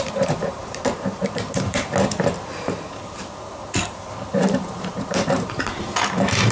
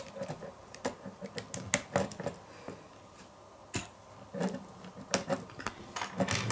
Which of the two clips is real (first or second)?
second